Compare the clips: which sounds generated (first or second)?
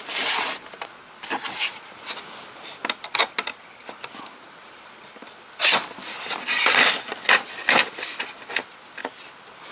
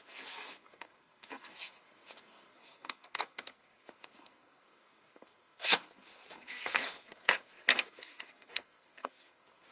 second